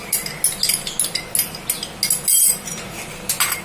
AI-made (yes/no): no